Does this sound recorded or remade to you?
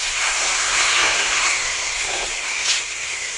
remade